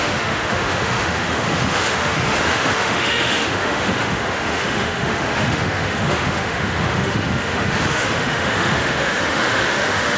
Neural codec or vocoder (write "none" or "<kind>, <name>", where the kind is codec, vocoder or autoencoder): autoencoder, DAC-VAE